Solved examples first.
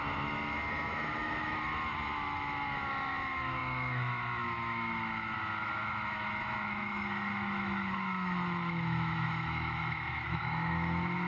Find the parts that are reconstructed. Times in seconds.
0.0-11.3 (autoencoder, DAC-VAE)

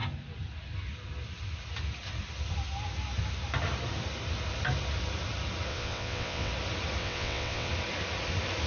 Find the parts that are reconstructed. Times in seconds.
5.7-6.5 (vocoder, WaveNeXt); 7.0-7.7

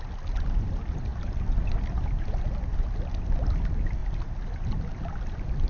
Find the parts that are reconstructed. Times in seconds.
1.1-2.4 (vocoder, BigVGAN v2); 4.0-5.0

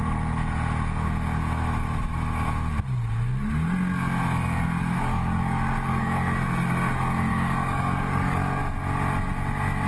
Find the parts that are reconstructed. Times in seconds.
4.8-6.2 (codec, DAC); 7.3-8.6

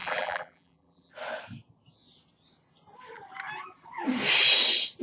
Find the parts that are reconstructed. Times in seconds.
0.0-1.1 (vocoder, BigVGAN v2)

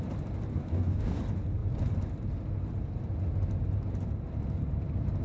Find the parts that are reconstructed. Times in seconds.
0.5-1.2 (codec, DAC)

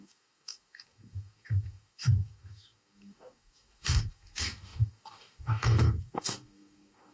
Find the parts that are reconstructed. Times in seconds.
0.0-7.1 (codec, DAC)